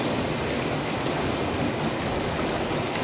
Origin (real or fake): real